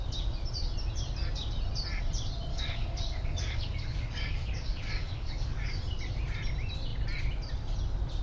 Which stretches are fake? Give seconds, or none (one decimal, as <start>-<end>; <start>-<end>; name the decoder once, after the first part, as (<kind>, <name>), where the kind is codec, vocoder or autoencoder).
2.5-5.8 (codec, DAC)